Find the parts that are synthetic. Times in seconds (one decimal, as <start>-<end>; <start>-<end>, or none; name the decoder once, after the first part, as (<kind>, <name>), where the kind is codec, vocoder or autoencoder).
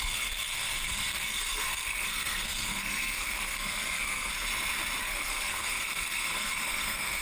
0.0-4.3 (codec, SNAC); 5.0-7.2